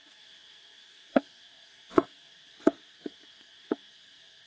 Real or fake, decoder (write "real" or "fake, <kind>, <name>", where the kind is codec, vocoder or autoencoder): fake, codec, SNAC